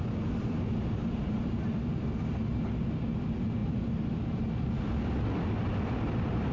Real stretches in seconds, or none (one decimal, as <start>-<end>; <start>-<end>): 0.0-6.5